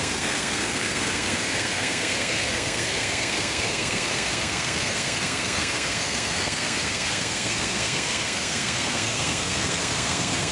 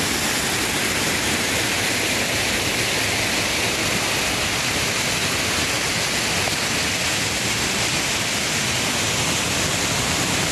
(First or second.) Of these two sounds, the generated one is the first